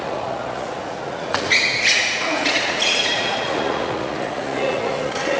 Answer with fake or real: fake